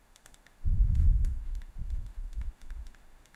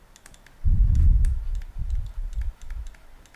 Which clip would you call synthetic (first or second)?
first